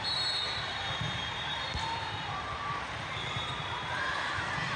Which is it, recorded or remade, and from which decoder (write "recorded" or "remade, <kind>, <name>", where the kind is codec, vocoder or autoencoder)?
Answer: remade, vocoder, BigVGAN v2